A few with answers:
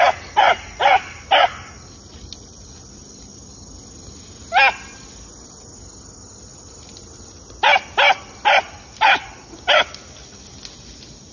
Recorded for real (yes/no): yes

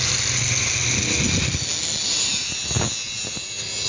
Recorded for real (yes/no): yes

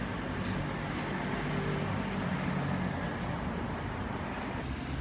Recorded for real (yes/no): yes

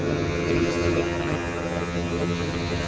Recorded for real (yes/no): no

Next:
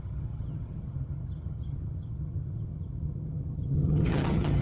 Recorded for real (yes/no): no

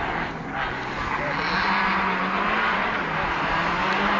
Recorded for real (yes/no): yes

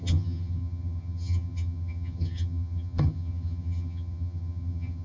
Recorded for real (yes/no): no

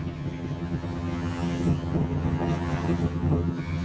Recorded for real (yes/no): no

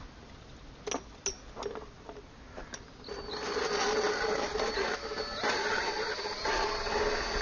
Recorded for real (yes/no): yes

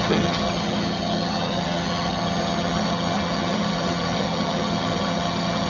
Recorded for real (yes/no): no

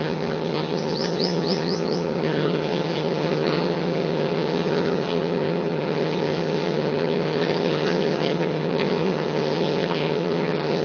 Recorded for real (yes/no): no